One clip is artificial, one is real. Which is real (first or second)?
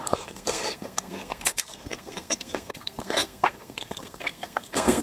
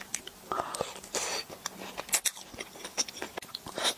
second